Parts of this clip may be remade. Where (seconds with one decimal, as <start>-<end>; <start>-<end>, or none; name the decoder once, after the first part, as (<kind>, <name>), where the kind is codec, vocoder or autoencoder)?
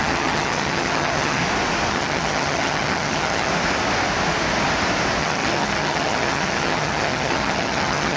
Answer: 0.0-1.4 (vocoder, HiFi-GAN); 1.9-3.5; 5.2-8.2